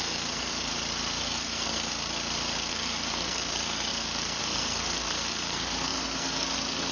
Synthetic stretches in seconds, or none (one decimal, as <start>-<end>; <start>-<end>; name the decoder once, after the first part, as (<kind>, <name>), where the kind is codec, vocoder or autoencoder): 0.0-0.7 (codec, SNAC); 1.2-1.9; 2.7-6.9